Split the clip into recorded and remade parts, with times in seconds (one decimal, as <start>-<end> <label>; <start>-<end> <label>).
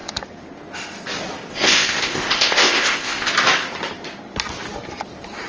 0.0-1.5 recorded; 1.5-3.3 remade; 3.3-5.5 recorded